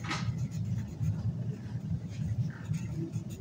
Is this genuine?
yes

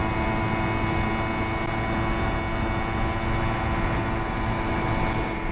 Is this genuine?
yes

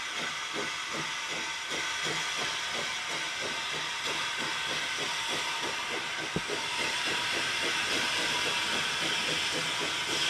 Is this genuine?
yes